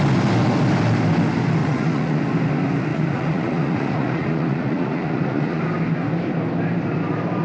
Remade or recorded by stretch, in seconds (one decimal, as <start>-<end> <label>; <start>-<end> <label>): 0.0-1.6 recorded; 1.6-2.2 remade; 2.2-2.9 recorded; 2.9-5.6 remade; 5.6-7.4 recorded